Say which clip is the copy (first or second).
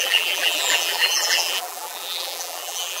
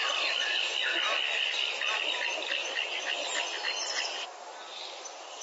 first